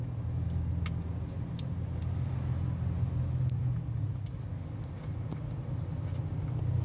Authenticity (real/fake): real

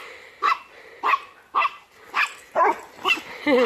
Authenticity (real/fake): real